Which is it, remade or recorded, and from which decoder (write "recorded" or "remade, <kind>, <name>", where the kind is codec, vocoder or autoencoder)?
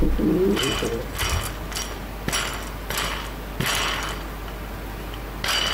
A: recorded